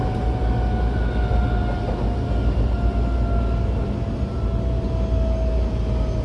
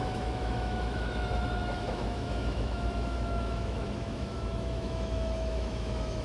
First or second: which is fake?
second